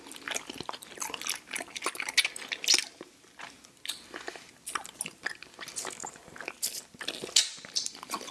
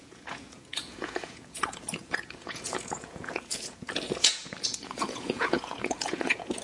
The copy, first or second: second